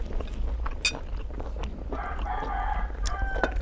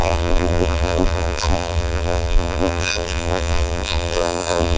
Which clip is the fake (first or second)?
second